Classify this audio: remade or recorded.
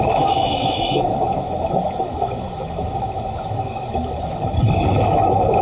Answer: remade